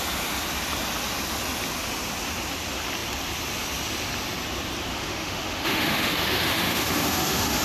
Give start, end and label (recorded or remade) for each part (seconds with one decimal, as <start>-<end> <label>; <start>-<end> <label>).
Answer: 0.0-4.9 recorded; 4.9-7.6 remade

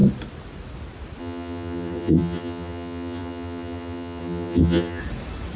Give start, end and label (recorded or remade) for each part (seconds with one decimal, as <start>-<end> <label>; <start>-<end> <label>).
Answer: 0.0-1.2 recorded; 1.2-5.0 remade; 5.0-5.6 recorded

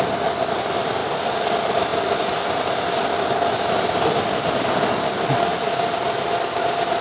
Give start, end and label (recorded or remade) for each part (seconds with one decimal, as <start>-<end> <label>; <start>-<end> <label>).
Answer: 0.0-7.0 recorded

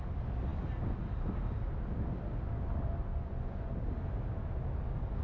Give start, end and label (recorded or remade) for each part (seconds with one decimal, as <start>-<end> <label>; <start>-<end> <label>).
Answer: 0.0-3.1 recorded; 3.1-3.7 remade; 3.7-5.2 recorded